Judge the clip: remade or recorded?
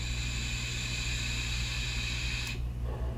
recorded